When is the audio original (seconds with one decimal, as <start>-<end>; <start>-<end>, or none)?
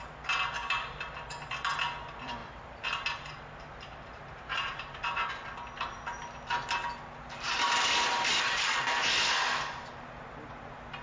0.0-2.4; 5.3-11.0